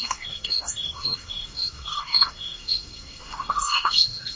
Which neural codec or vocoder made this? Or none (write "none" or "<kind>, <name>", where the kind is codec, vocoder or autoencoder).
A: codec, SNAC